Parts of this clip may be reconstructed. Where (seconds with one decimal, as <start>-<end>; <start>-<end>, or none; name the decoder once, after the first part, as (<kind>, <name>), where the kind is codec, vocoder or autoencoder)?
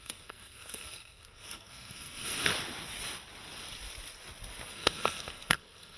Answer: 0.0-2.5 (codec, SNAC); 4.7-6.0